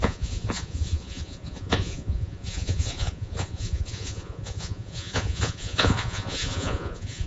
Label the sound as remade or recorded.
remade